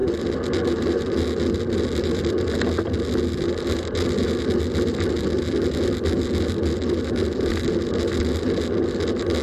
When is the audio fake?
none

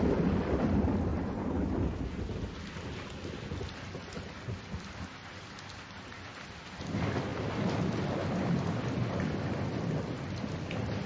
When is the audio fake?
none

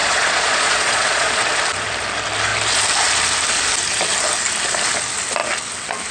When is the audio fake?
0.0-1.4 (vocoder, Vocos)

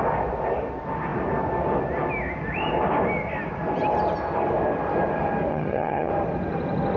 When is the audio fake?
5.5-6.1 (vocoder, HiFi-GAN)

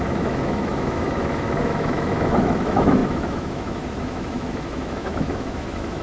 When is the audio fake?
0.0-6.0 (autoencoder, DAC-VAE)

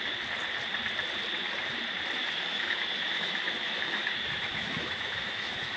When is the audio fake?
2.2-5.8 (autoencoder, DAC-VAE)

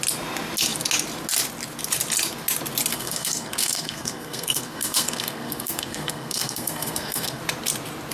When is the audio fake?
2.9-7.4 (codec, SNAC)